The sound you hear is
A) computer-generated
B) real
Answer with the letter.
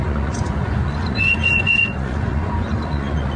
A